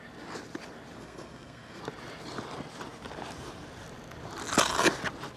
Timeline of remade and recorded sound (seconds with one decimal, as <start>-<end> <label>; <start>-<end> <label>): 0.0-1.0 recorded; 1.0-1.8 remade; 1.8-5.4 recorded